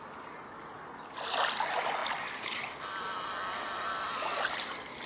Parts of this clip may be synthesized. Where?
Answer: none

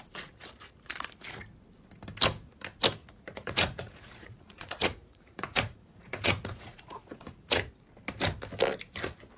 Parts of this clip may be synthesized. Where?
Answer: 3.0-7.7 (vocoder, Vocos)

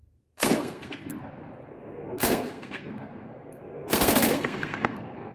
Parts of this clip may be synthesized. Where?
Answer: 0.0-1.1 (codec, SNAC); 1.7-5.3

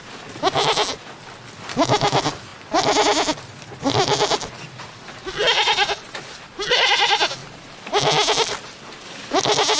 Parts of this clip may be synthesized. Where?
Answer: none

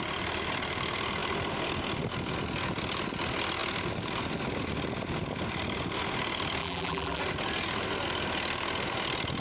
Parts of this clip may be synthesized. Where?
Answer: 6.6-7.2 (vocoder, BigVGAN v2)

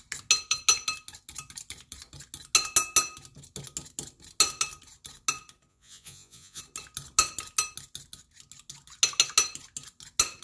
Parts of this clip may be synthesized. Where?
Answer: 5.7-6.6 (vocoder, Vocos)

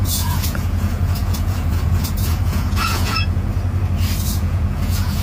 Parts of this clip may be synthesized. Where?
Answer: 0.0-3.5 (vocoder, Vocos); 4.3-5.2